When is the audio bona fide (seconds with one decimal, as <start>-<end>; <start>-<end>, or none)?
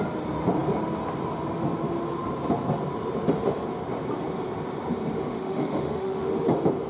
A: 0.0-5.3; 6.3-6.9